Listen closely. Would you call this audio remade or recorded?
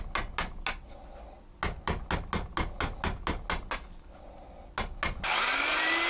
recorded